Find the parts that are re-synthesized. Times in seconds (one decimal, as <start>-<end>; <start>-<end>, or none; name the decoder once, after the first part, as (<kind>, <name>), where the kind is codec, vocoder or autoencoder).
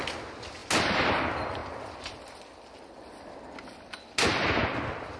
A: none